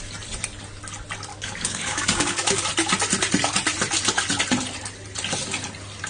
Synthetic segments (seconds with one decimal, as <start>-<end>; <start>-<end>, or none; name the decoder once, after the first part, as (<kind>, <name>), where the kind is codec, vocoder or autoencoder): 1.3-2.6 (codec, DAC)